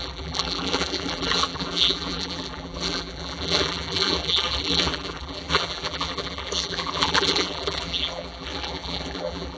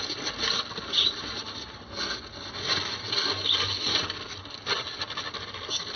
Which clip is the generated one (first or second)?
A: first